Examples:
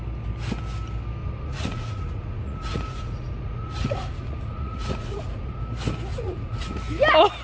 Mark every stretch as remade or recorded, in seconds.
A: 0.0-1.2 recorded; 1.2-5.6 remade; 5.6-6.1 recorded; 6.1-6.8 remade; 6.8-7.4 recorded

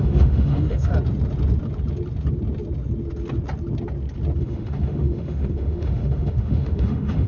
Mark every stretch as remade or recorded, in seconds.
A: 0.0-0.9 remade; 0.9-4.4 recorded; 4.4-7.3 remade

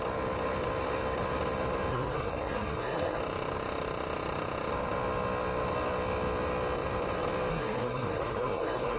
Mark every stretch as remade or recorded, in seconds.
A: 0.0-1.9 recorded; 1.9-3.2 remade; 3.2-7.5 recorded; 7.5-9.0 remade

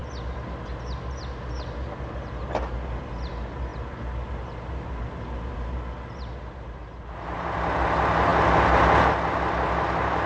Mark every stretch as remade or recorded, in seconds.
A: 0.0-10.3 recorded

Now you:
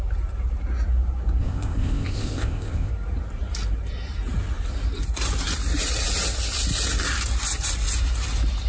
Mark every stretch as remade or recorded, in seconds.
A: 0.0-1.4 recorded; 1.4-2.9 remade; 2.9-8.7 recorded

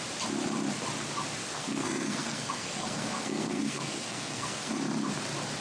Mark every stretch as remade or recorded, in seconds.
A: 0.0-1.4 recorded; 1.4-4.7 remade; 4.7-5.6 recorded

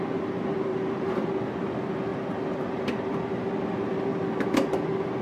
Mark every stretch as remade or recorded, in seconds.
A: 0.0-0.7 recorded; 0.7-1.3 remade; 1.3-5.2 recorded